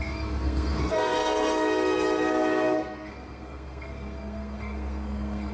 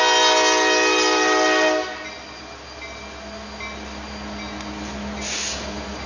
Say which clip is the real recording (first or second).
second